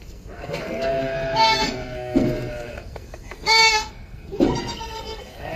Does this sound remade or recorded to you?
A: remade